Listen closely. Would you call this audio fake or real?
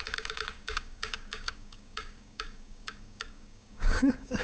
fake